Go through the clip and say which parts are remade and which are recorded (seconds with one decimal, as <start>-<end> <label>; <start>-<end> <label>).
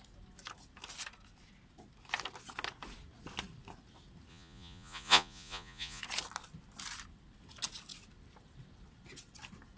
0.0-4.3 recorded; 4.3-6.0 remade; 6.0-9.8 recorded